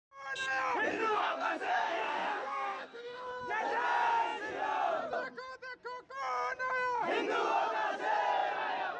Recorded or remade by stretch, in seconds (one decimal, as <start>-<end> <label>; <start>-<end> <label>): 0.0-0.9 recorded; 0.9-3.4 remade; 3.4-9.0 recorded